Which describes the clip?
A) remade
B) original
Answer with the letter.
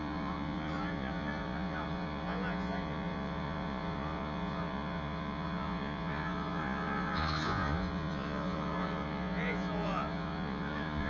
A